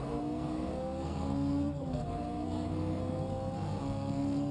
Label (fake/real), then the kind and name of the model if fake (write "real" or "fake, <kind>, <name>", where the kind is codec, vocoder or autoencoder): fake, codec, SNAC